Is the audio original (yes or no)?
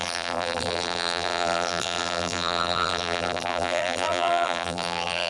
no